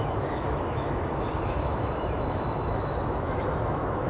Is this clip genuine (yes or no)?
no